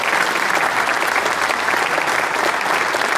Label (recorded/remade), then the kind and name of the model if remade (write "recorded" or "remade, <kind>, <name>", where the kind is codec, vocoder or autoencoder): remade, vocoder, BigVGAN v2